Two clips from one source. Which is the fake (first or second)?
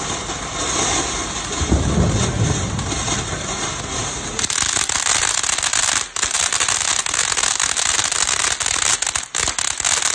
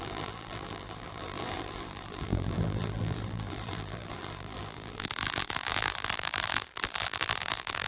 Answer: second